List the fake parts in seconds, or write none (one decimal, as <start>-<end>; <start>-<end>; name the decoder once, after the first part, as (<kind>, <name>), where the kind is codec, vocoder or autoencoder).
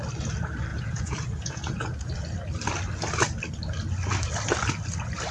0.7-2.1 (vocoder, Vocos)